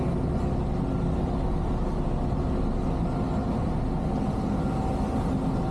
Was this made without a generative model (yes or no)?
yes